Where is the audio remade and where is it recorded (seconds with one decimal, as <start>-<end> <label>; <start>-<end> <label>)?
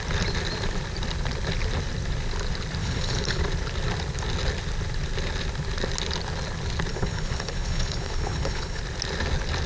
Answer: 0.0-2.8 recorded; 2.8-3.4 remade; 3.4-6.9 recorded; 6.9-8.8 remade; 8.8-9.7 recorded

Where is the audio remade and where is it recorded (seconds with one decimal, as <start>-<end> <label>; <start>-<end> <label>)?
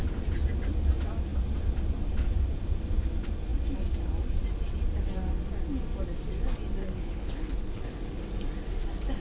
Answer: 0.0-6.8 recorded; 6.8-8.2 remade; 8.2-9.2 recorded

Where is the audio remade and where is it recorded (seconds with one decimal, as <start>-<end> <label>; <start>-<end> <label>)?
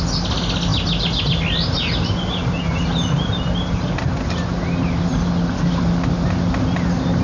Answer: 0.0-7.2 recorded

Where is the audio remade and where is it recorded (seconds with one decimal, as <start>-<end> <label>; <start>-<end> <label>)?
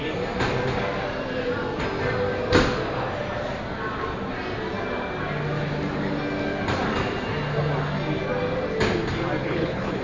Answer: 0.0-9.4 recorded; 9.4-10.0 remade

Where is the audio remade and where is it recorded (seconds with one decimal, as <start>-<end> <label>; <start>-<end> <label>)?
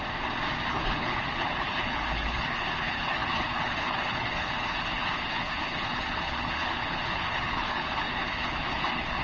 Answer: 0.0-0.7 recorded; 0.7-9.2 remade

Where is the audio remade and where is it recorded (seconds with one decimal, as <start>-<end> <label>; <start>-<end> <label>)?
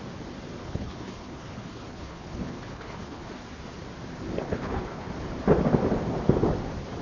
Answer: 0.0-0.6 recorded; 0.6-3.3 remade; 3.3-4.4 recorded; 4.4-5.1 remade; 5.1-7.0 recorded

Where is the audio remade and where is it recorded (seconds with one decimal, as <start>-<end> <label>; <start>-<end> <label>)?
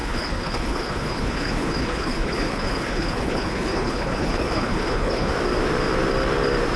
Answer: 0.0-5.3 remade; 5.3-6.8 recorded